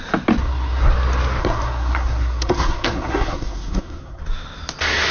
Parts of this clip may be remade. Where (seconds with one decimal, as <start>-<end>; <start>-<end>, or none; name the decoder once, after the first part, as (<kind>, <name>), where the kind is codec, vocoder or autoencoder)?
0.4-0.9 (codec, SNAC); 1.4-4.2